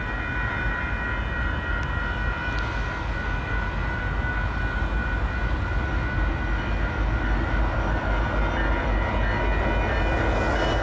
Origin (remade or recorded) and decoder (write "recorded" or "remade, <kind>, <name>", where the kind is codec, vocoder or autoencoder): recorded